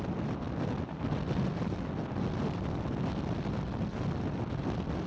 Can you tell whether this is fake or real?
real